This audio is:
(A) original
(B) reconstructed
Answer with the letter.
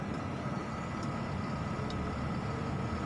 A